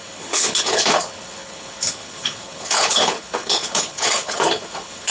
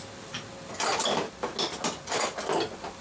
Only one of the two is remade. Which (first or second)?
first